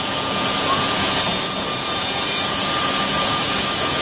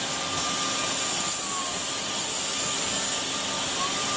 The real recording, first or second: second